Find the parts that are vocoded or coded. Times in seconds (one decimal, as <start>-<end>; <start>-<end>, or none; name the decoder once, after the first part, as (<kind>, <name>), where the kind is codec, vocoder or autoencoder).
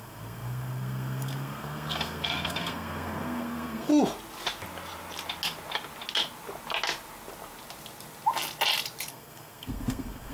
0.0-3.9 (codec, SNAC); 9.1-10.3